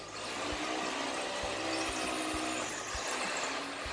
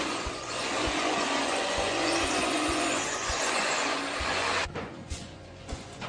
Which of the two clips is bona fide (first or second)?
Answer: first